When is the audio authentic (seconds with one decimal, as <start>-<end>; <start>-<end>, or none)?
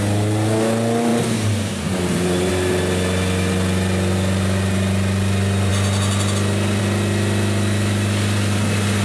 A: 0.0-1.1; 2.5-9.0